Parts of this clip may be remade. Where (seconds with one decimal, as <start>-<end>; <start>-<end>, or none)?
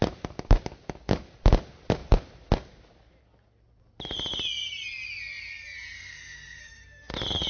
none